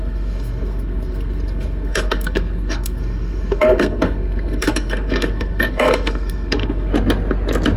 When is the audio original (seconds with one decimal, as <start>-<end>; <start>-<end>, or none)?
6.9-7.8